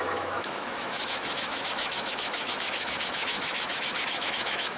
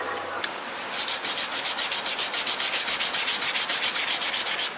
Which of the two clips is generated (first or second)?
first